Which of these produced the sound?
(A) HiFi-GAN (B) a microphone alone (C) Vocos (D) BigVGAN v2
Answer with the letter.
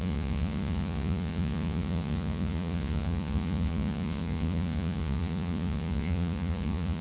C